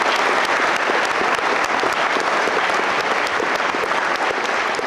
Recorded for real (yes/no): yes